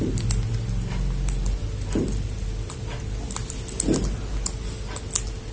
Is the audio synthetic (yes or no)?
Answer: no